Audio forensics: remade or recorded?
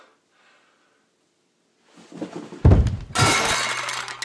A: recorded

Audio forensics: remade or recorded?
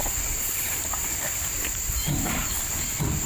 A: recorded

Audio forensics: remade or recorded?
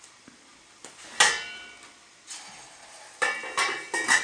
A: recorded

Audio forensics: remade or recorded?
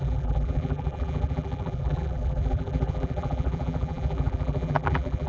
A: remade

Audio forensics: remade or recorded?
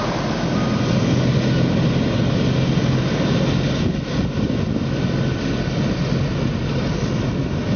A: recorded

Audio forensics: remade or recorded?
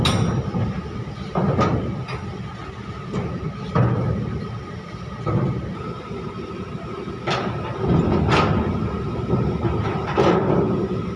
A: recorded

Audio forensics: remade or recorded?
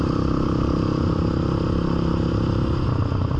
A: recorded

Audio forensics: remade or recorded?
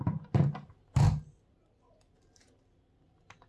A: recorded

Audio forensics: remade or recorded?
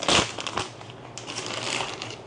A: recorded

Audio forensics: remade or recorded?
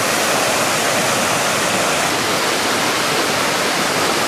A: recorded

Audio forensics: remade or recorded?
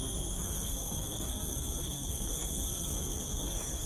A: remade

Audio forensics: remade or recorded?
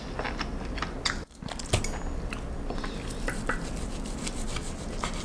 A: recorded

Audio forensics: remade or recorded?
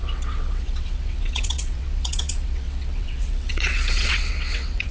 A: remade